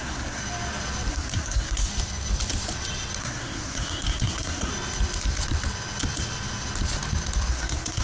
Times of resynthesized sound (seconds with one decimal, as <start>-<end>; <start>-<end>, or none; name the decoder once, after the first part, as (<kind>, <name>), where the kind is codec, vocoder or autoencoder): 0.0-0.4 (codec, SNAC); 1.1-1.9; 3.2-4.7; 7.5-8.0